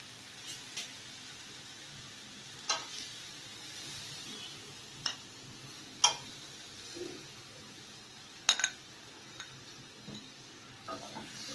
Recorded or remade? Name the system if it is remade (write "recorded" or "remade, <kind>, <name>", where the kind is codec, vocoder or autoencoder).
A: recorded